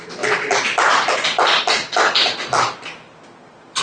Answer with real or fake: real